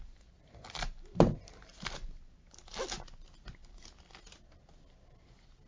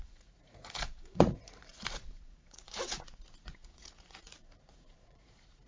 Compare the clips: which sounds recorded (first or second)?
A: first